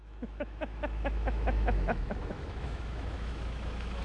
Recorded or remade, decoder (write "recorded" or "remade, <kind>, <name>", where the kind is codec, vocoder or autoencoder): remade, autoencoder, DAC-VAE